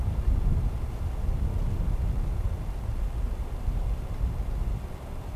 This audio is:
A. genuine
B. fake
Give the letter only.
A